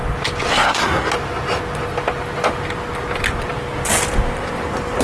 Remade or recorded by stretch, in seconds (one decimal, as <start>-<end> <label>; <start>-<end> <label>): 0.0-0.5 recorded; 0.5-1.1 remade; 1.1-5.0 recorded